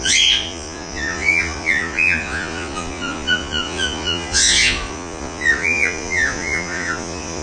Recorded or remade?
remade